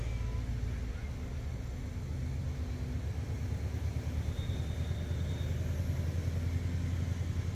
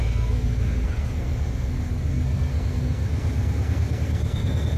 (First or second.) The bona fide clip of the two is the first